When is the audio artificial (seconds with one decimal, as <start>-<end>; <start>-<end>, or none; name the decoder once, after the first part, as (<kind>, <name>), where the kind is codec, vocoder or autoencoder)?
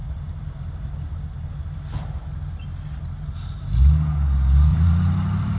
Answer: 0.0-1.5 (vocoder, BigVGAN v2); 4.7-5.6